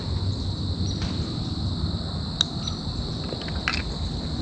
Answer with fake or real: real